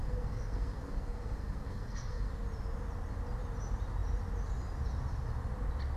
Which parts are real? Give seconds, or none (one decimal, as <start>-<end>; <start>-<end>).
2.3-6.0